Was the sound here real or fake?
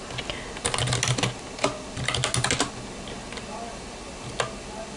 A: real